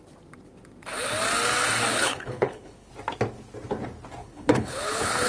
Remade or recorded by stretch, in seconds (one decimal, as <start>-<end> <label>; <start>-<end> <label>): 0.0-1.9 recorded; 1.9-2.9 remade; 2.9-4.2 recorded; 4.2-5.3 remade